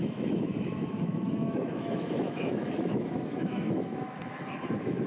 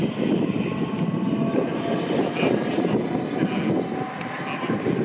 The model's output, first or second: first